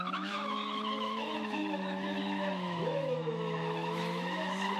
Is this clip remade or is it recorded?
remade